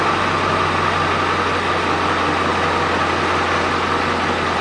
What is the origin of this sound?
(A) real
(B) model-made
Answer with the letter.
A